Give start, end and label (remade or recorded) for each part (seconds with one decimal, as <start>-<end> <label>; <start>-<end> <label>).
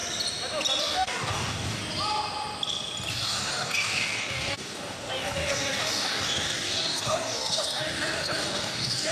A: 0.0-0.8 recorded; 0.8-1.8 remade; 1.8-3.1 recorded; 3.1-9.1 remade